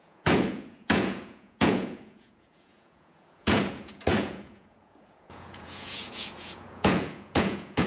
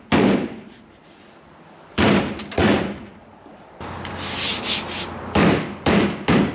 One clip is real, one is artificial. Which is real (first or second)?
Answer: second